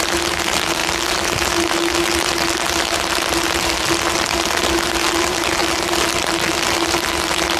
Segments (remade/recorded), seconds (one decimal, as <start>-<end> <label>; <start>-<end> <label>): 0.0-7.6 recorded